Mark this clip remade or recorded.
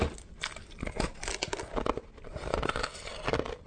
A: recorded